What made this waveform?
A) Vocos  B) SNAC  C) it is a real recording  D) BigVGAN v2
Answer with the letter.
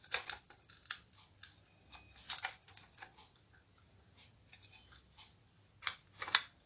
C